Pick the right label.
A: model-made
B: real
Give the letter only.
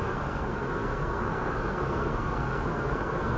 A